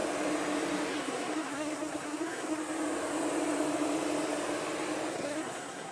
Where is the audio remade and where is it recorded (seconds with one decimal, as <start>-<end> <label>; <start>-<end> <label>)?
0.0-0.9 recorded; 0.9-2.6 remade; 2.6-5.1 recorded; 5.1-5.9 remade